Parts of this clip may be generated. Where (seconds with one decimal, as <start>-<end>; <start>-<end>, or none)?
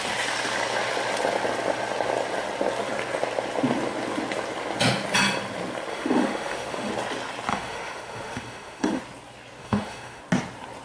5.9-6.9; 7.5-9.0; 9.6-10.2